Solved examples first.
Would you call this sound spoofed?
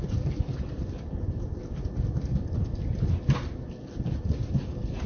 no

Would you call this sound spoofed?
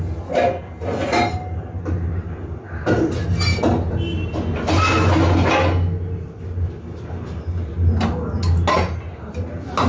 no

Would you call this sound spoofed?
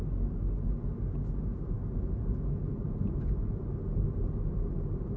no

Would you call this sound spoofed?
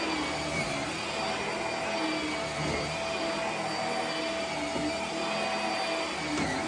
no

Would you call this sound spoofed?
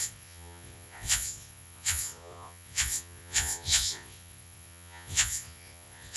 yes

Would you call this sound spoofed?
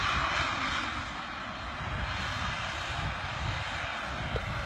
no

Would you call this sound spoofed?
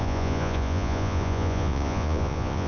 yes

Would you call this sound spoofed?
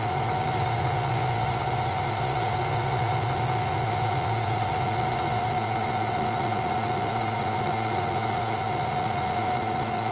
yes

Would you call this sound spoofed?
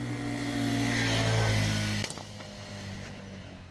no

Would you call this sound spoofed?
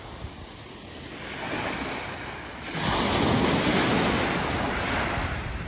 no